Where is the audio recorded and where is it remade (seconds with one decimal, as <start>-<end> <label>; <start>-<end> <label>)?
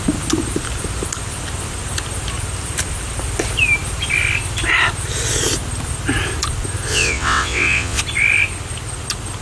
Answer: 0.0-6.9 recorded; 6.9-8.0 remade; 8.0-9.4 recorded